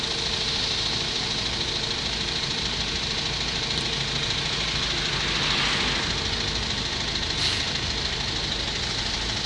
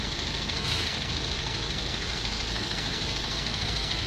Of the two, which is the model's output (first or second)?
second